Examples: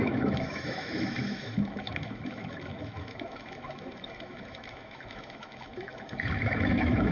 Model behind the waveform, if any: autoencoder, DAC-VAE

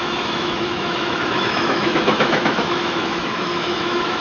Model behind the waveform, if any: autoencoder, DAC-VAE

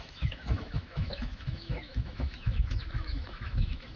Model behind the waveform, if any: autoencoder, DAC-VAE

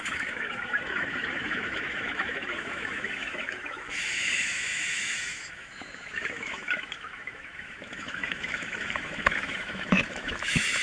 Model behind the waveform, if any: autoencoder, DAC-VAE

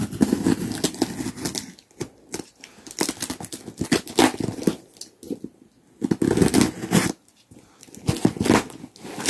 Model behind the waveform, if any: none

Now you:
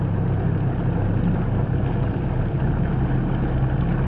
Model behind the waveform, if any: none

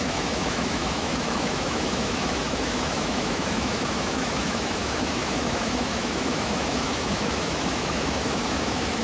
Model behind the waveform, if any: autoencoder, DAC-VAE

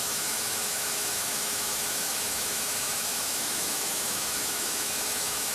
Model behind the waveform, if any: autoencoder, DAC-VAE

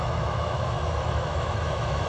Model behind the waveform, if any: autoencoder, DAC-VAE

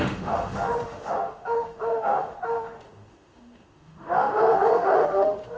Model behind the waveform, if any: autoencoder, DAC-VAE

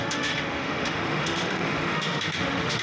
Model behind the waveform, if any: autoencoder, DAC-VAE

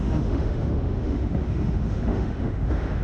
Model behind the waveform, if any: autoencoder, DAC-VAE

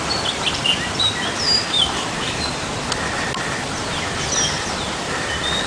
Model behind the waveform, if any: none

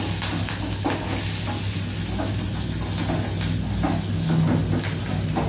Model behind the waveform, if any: none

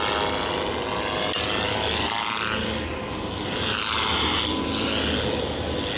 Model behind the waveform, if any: none